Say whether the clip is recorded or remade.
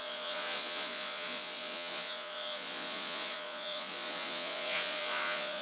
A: remade